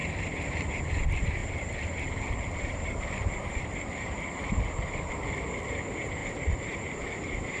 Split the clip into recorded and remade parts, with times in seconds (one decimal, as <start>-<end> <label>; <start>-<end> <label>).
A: 0.0-0.5 recorded; 0.5-7.6 remade